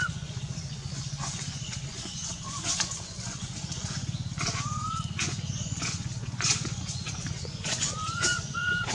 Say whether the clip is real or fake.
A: fake